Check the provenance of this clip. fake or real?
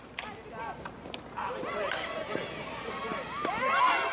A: real